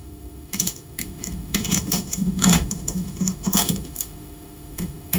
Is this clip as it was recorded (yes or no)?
no